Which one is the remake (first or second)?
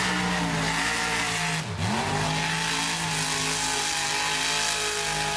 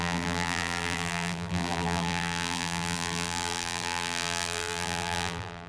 second